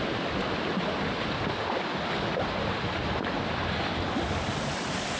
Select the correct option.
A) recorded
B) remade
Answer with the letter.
A